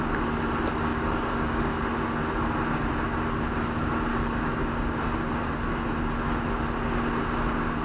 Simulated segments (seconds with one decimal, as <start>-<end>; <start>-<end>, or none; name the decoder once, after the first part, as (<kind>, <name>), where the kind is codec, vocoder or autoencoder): 0.9-1.8 (codec, DAC); 4.1-4.7